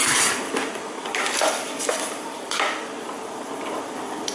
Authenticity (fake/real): fake